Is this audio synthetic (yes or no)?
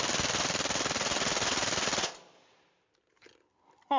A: no